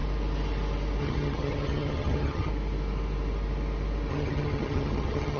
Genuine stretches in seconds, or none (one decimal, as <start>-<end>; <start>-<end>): 0.0-1.0; 2.5-4.1